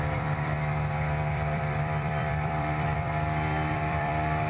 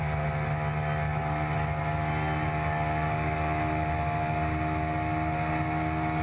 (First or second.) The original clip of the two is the second